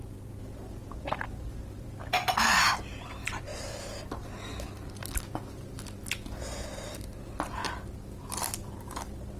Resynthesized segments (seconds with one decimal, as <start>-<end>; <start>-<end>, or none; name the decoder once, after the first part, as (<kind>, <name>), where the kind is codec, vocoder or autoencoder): none